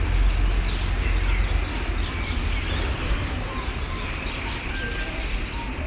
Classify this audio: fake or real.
real